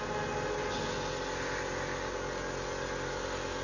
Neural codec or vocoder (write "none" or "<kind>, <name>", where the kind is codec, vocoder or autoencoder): none